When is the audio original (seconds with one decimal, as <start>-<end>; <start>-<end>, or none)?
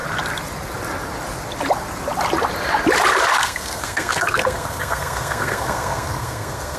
0.0-3.4